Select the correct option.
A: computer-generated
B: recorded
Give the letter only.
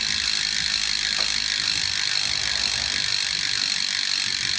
B